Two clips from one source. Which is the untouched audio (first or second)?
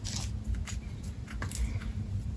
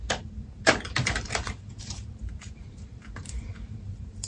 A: first